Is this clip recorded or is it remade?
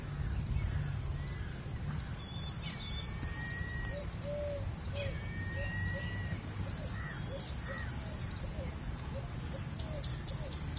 recorded